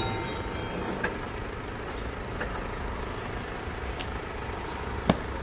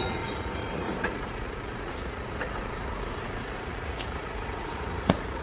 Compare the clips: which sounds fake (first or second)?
second